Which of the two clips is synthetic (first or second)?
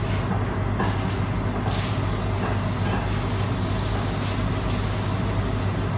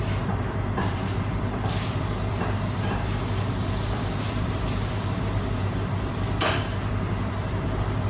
second